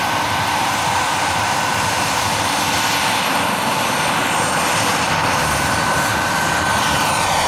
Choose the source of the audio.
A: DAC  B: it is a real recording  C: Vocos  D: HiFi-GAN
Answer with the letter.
B